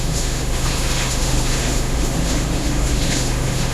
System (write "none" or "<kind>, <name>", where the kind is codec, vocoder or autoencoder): autoencoder, DAC-VAE